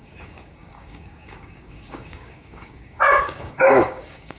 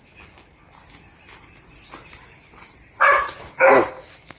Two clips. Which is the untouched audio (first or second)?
second